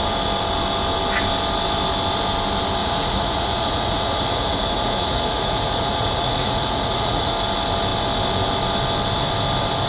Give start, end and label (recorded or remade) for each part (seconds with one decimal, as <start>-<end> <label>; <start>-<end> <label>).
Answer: 0.0-2.8 recorded; 2.8-7.3 remade; 7.3-9.9 recorded